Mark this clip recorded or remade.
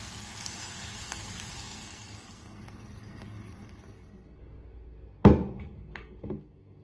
remade